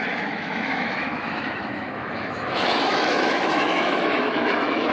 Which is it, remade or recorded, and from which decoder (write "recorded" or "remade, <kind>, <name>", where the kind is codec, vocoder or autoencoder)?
remade, autoencoder, DAC-VAE